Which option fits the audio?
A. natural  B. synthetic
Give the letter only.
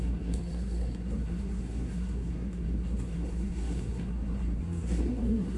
B